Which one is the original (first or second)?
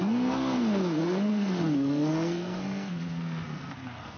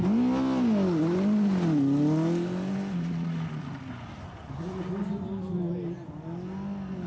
second